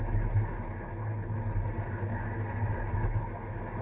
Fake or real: real